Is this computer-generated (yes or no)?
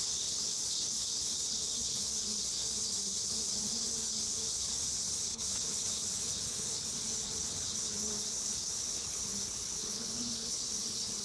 yes